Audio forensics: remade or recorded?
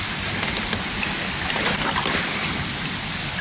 recorded